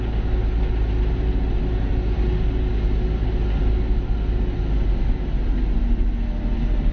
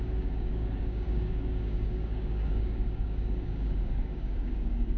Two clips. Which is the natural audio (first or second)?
first